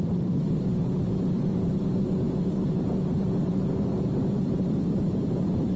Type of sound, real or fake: fake